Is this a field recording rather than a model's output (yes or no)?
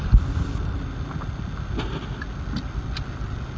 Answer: yes